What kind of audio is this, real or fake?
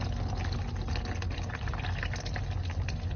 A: real